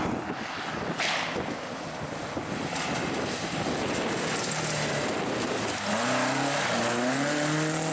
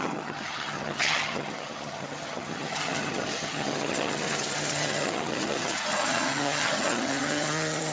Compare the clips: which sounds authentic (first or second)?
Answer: first